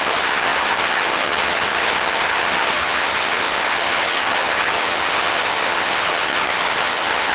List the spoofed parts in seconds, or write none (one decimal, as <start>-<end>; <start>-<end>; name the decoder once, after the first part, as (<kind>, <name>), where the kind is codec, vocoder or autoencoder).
0.0-7.3 (vocoder, HiFi-GAN)